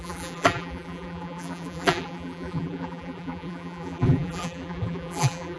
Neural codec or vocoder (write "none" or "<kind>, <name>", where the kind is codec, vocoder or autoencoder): vocoder, BigVGAN v2